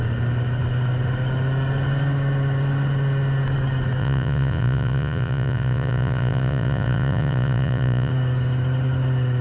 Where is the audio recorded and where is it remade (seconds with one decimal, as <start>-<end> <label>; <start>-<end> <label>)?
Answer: 0.0-4.0 recorded; 4.0-8.1 remade; 8.1-9.4 recorded